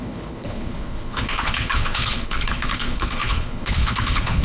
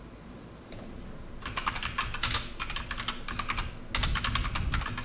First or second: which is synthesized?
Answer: first